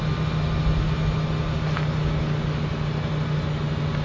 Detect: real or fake real